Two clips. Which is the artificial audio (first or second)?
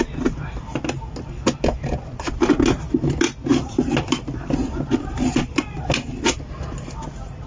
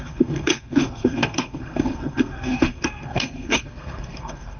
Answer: second